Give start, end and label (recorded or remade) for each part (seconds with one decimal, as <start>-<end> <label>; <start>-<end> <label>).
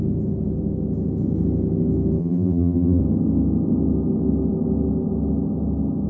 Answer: 0.0-2.2 recorded; 2.2-3.0 remade; 3.0-6.1 recorded